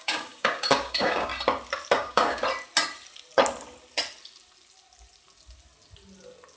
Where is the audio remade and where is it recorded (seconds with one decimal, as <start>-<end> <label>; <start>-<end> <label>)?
0.0-1.3 remade; 1.3-1.9 recorded; 1.9-2.4 remade; 2.4-6.6 recorded